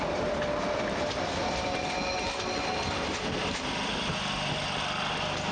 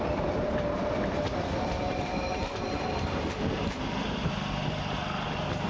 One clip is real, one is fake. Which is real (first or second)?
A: first